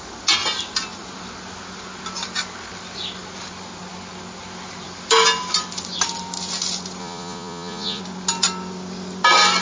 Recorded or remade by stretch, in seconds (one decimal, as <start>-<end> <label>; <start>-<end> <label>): 0.0-7.0 recorded; 7.0-8.0 remade; 8.0-9.6 recorded